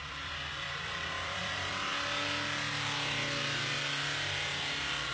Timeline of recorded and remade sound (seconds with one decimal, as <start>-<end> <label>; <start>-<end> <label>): 0.0-1.9 remade; 1.9-5.1 recorded